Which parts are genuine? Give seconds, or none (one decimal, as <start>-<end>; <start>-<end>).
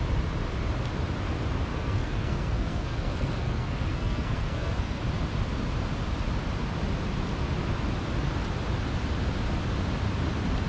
0.0-1.7; 5.0-10.7